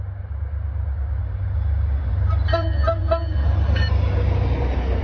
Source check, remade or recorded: recorded